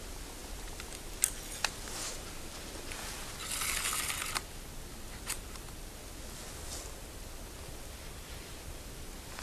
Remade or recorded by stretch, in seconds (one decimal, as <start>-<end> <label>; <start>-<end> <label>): 0.0-9.4 recorded